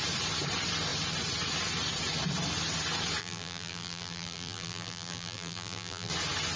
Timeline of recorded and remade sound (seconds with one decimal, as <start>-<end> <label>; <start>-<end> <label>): 0.0-3.2 recorded; 3.2-6.1 remade; 6.1-6.6 recorded